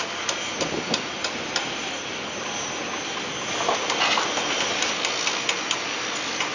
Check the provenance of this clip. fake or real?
real